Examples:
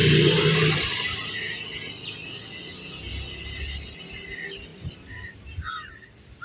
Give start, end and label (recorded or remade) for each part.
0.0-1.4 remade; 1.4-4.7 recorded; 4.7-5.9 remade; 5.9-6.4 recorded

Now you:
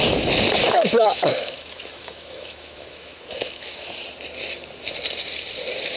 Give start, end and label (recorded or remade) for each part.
0.0-0.6 recorded; 0.6-3.9 remade; 3.9-6.0 recorded

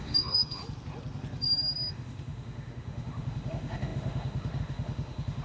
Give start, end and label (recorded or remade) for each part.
0.0-0.6 remade; 0.6-1.9 recorded; 1.9-5.4 remade

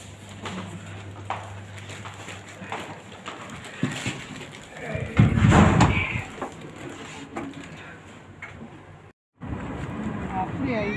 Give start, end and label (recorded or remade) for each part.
0.0-7.3 recorded; 7.3-10.2 remade; 10.2-11.0 recorded

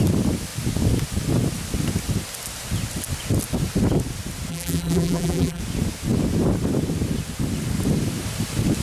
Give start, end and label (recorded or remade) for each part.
0.0-4.5 recorded; 4.5-5.6 remade; 5.6-8.8 recorded